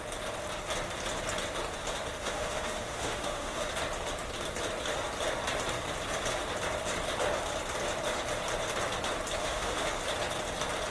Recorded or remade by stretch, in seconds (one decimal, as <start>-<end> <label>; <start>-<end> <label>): 0.0-2.2 recorded; 2.2-3.7 remade; 3.7-9.4 recorded; 9.4-9.9 remade; 9.9-10.9 recorded